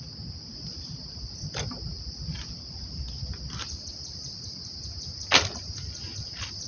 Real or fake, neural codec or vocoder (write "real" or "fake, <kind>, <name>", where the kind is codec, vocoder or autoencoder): real